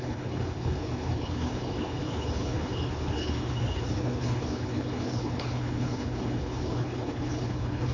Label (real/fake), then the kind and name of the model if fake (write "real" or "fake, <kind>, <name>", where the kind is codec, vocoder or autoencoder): fake, codec, HILCodec